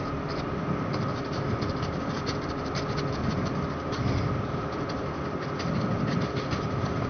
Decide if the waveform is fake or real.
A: real